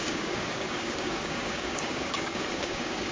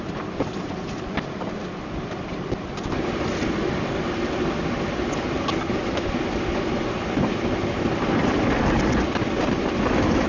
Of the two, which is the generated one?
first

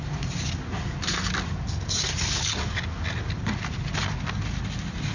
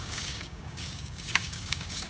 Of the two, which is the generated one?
second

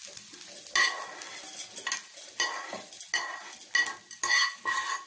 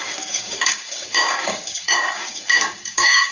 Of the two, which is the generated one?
second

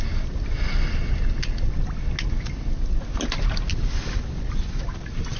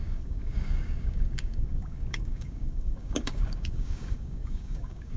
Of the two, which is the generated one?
second